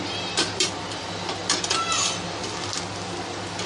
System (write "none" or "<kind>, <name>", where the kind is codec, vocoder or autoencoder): vocoder, BigVGAN v2